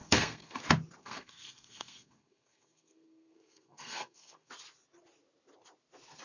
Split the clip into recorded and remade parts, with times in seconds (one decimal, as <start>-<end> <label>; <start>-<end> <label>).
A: 0.0-0.6 remade; 0.6-1.0 recorded; 1.0-4.5 remade; 4.5-6.2 recorded